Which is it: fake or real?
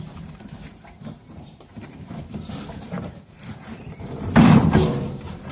fake